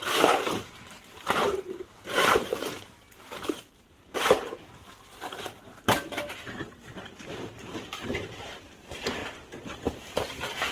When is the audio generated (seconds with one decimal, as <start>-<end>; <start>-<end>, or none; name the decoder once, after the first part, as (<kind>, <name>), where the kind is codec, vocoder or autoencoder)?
0.0-2.6 (vocoder, BigVGAN v2); 3.1-9.2; 10.0-10.7